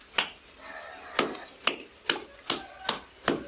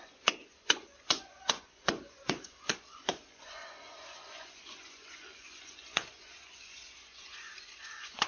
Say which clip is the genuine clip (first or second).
first